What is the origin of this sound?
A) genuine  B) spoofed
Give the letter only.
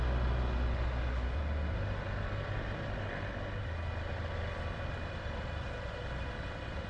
A